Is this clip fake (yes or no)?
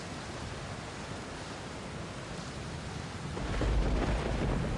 no